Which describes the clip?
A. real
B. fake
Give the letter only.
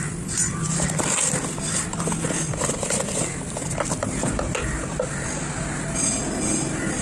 A